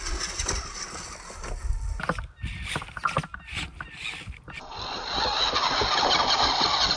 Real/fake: real